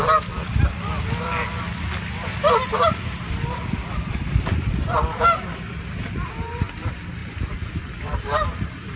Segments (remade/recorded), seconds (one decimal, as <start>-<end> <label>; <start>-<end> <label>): 0.0-9.0 recorded